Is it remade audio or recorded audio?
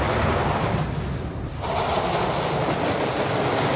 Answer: recorded